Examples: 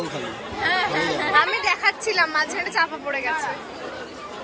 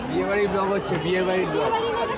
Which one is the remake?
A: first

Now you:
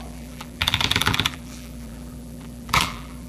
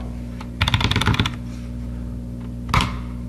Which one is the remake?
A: first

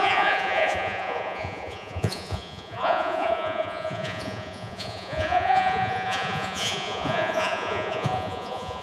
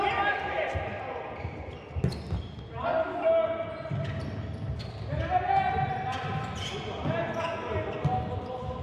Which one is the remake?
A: first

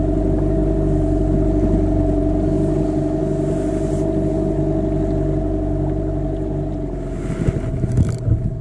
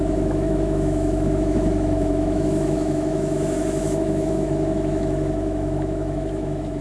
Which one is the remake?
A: second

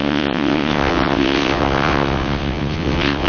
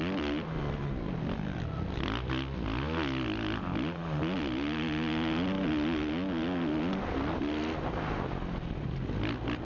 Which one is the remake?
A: first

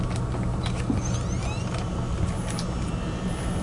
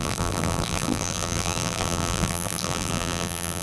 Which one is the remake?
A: second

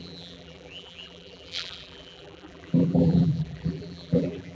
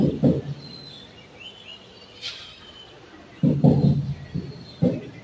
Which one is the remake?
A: first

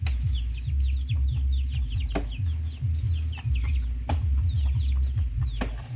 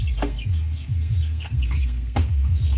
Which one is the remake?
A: second